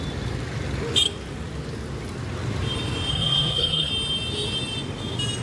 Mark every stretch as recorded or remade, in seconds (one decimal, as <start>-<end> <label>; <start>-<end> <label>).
0.0-3.1 recorded; 3.1-3.9 remade; 3.9-5.4 recorded